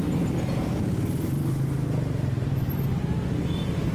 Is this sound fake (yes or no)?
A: no